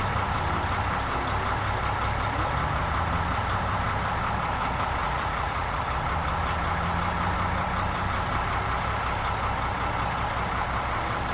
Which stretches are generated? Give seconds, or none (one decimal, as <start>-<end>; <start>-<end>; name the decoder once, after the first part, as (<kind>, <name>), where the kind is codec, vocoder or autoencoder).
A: 5.0-5.8 (vocoder, Vocos)